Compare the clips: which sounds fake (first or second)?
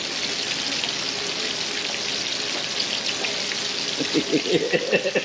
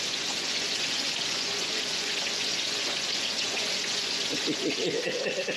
second